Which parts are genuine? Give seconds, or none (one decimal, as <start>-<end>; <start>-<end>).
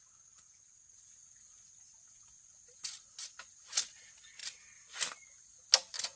0.0-6.2